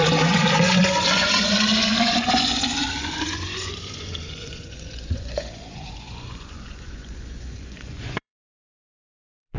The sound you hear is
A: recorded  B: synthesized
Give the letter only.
B